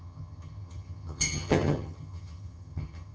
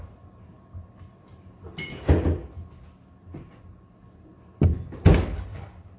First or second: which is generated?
first